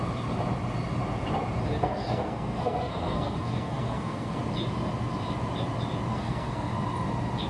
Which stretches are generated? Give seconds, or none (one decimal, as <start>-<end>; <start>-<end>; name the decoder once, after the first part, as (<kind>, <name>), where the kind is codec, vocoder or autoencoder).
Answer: 1.8-4.4 (codec, SNAC); 6.1-6.7